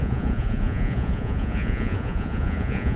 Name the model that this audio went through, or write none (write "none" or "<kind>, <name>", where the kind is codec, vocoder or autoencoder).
vocoder, Vocos